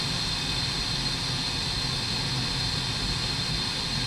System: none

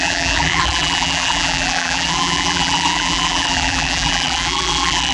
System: vocoder, BigVGAN v2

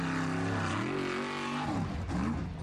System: none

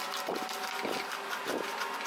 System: none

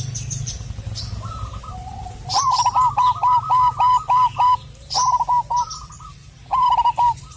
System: vocoder, BigVGAN v2